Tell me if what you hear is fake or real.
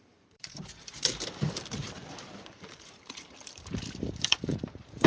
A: fake